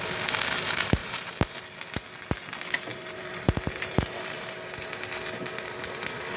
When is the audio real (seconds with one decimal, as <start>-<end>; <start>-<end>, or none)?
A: 0.0-1.0; 1.6-2.9; 4.6-6.4